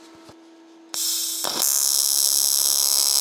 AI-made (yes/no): no